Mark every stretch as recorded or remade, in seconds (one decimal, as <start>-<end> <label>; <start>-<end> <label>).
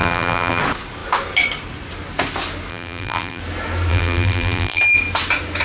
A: 0.0-0.6 remade; 0.6-2.7 recorded; 2.7-3.4 remade; 3.4-3.9 recorded; 3.9-4.8 remade; 4.8-5.6 recorded